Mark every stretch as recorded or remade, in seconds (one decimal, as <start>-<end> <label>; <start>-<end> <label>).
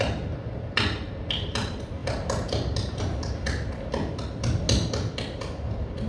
0.0-6.1 recorded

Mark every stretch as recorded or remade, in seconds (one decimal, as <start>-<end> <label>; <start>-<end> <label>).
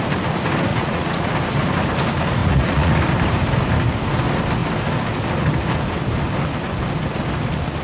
0.0-0.7 recorded; 0.7-1.3 remade; 1.3-2.4 recorded; 2.4-3.0 remade; 3.0-7.8 recorded